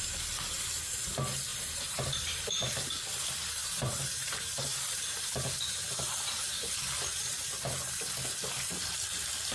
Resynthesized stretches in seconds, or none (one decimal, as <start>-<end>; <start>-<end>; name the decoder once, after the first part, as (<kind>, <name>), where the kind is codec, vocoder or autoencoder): 1.5-2.7 (vocoder, BigVGAN v2); 3.6-7.7